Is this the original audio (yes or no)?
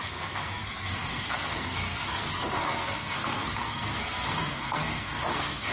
no